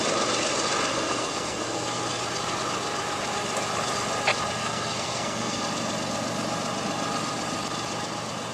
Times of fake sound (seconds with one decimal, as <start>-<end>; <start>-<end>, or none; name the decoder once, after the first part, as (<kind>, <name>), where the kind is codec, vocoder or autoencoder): 0.9-2.0 (codec, SNAC); 4.6-5.6